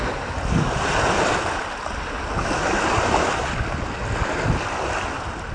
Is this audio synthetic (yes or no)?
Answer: no